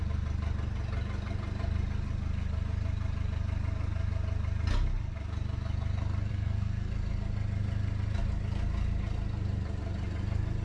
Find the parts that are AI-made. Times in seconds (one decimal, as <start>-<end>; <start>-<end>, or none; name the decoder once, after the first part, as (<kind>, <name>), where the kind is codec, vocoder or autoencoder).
6.3-6.9 (codec, SNAC)